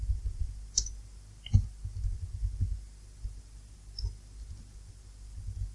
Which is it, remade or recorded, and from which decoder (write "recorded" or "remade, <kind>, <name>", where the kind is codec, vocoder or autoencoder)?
recorded